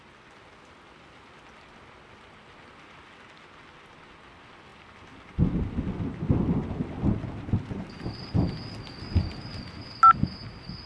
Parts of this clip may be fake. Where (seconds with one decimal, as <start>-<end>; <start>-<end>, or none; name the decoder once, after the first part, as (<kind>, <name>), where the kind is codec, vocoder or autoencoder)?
none